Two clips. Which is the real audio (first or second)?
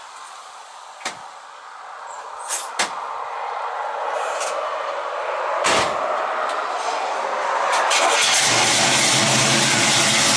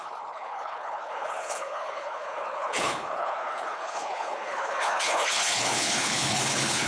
first